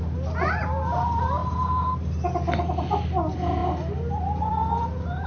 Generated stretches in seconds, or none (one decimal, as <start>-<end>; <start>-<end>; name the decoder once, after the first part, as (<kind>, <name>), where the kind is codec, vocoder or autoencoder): none